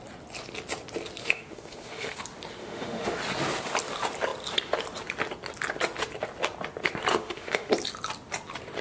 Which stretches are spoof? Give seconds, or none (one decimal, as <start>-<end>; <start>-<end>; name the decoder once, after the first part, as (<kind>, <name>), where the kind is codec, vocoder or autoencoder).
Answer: 1.2-2.2 (autoencoder, DAC-VAE); 2.6-3.2; 7.1-7.7